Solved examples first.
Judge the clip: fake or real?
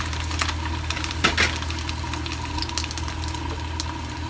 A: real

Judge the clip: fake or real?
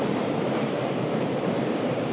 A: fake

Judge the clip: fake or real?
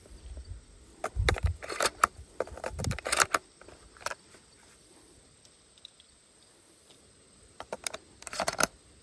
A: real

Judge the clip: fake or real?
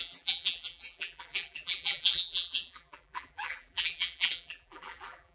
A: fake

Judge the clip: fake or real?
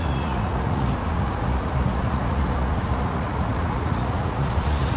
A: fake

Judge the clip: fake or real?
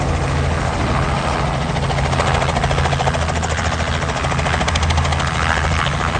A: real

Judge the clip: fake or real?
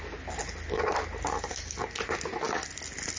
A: real